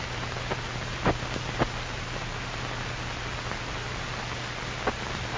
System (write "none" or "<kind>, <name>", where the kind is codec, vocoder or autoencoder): none